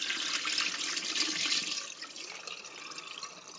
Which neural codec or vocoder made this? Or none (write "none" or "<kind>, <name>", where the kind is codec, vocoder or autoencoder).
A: none